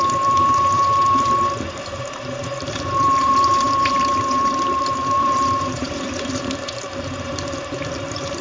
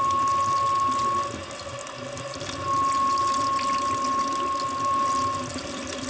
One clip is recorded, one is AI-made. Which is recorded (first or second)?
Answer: second